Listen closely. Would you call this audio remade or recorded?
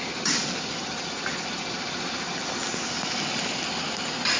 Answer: recorded